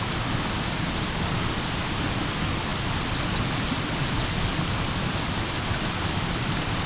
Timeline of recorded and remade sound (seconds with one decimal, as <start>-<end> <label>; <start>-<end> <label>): 0.0-6.9 recorded